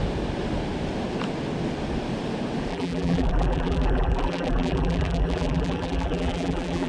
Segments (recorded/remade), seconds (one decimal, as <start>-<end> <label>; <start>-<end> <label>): 0.0-2.7 recorded; 2.7-6.9 remade